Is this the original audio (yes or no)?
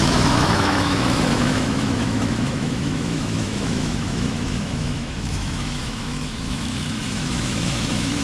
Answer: no